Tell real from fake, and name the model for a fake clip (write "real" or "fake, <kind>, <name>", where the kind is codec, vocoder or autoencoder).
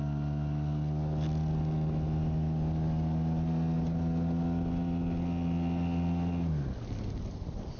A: real